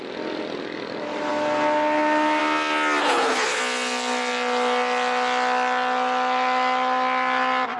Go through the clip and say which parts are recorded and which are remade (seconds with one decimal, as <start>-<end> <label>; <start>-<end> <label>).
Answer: 0.0-3.0 recorded; 3.0-3.6 remade; 3.6-7.8 recorded